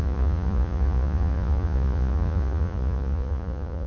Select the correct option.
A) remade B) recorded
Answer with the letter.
A